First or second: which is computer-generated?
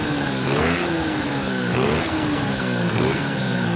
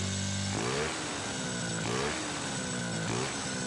first